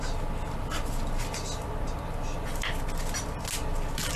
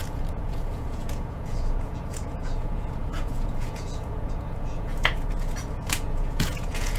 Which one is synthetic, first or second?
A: second